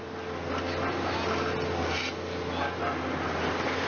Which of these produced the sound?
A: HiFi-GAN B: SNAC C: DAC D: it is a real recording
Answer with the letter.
D